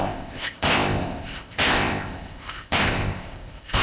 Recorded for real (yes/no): no